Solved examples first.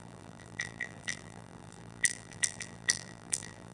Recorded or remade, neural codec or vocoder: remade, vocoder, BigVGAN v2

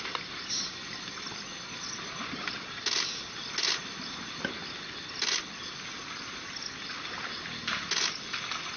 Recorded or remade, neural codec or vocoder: recorded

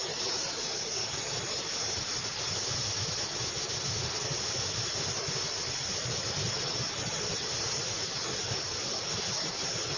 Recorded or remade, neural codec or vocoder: recorded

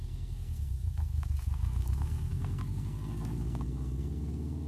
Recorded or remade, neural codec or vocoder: remade, codec, SNAC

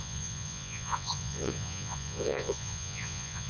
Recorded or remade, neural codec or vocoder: remade, vocoder, Vocos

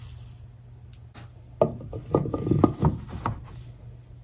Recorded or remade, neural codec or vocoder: recorded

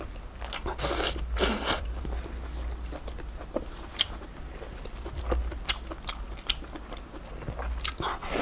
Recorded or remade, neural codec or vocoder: recorded